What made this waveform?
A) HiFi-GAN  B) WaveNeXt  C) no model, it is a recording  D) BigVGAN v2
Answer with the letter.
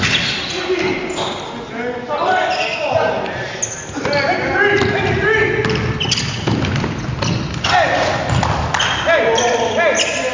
C